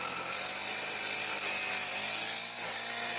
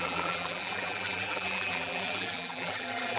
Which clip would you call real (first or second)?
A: first